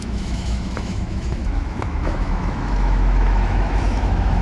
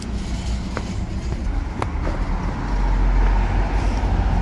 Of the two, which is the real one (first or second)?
second